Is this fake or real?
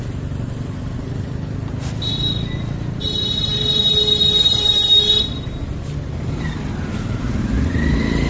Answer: real